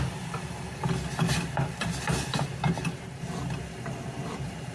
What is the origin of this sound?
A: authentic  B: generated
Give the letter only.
A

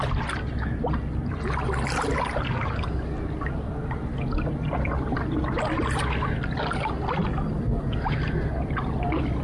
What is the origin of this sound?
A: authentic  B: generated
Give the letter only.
A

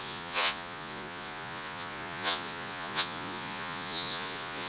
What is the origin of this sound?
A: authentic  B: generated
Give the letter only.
B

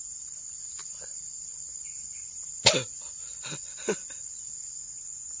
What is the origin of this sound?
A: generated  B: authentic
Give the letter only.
B